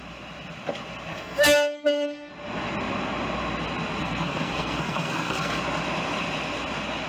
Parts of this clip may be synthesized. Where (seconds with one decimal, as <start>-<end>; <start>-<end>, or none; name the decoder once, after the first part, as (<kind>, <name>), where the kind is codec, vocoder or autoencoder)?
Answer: 1.1-2.3 (codec, SNAC); 4.0-5.6